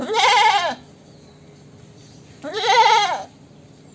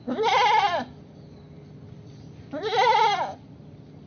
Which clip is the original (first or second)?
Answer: first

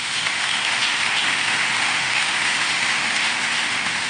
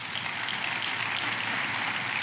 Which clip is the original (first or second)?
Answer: second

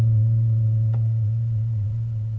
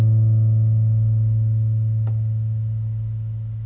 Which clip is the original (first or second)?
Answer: second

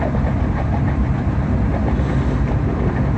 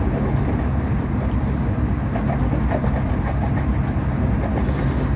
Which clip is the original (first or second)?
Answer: second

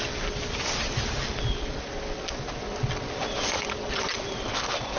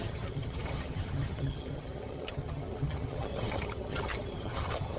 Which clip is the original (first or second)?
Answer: first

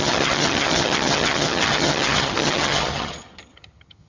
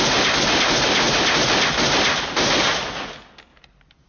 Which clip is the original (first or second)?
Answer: second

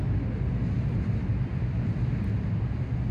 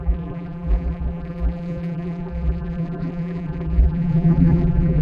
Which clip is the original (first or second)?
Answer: first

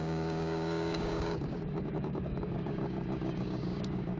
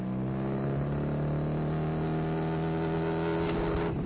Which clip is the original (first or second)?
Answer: second